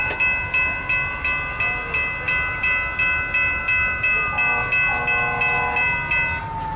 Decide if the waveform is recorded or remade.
recorded